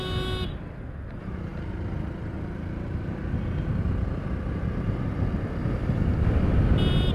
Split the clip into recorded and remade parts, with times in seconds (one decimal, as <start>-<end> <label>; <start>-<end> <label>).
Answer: 0.0-7.1 recorded